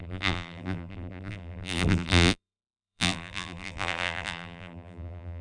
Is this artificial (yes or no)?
yes